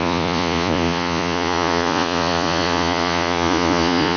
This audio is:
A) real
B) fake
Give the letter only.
B